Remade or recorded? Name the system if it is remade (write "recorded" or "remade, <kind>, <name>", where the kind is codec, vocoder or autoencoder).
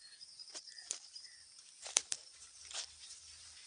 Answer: remade, vocoder, BigVGAN v2